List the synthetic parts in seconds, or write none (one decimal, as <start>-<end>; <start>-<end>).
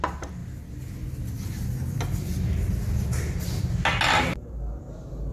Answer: none